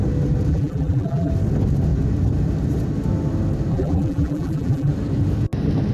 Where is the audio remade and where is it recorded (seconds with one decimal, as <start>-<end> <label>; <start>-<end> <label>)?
0.0-0.5 recorded; 0.5-1.3 remade; 1.3-3.7 recorded; 3.7-4.9 remade; 4.9-5.9 recorded